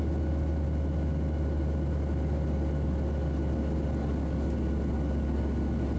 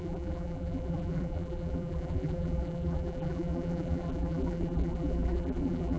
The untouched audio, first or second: first